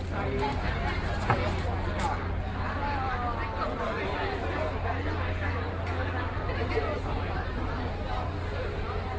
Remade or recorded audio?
recorded